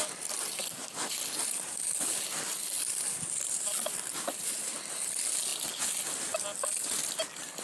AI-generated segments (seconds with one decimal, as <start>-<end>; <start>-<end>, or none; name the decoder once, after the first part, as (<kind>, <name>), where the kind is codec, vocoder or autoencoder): none

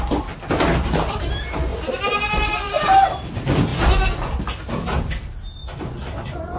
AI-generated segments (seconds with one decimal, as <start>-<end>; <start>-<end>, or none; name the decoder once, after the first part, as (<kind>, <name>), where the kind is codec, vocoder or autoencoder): 1.7-3.3 (vocoder, BigVGAN v2); 5.6-6.6